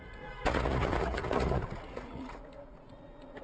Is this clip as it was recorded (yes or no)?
no